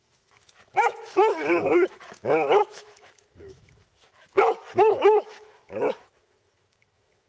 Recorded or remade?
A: remade